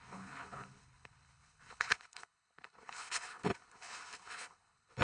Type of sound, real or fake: fake